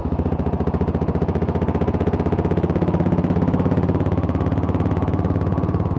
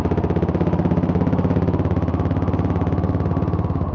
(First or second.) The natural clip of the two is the second